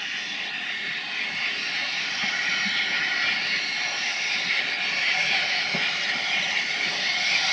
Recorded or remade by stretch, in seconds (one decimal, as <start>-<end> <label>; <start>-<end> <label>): 0.0-7.5 recorded